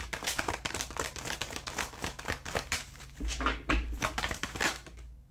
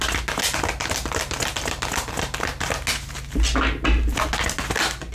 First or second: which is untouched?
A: second